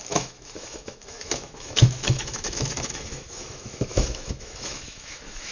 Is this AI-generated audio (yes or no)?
yes